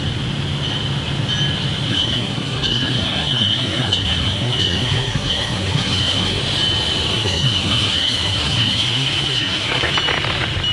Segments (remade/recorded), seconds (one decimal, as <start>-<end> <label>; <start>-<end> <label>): 0.0-1.9 recorded; 1.9-6.4 remade; 6.4-7.1 recorded; 7.1-9.9 remade; 9.9-10.7 recorded